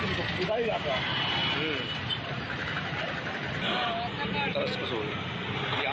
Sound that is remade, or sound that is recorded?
recorded